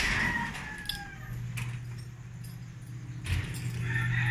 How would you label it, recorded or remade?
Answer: recorded